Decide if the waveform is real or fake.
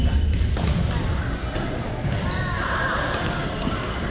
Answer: real